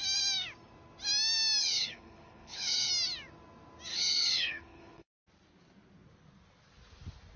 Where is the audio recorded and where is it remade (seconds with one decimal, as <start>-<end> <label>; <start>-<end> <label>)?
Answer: 0.0-1.6 recorded; 1.6-2.9 remade; 2.9-3.9 recorded; 3.9-5.1 remade; 5.1-7.4 recorded